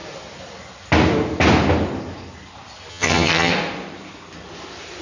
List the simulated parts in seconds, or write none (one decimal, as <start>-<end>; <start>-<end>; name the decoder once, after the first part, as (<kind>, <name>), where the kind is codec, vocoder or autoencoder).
2.9-3.5 (vocoder, HiFi-GAN)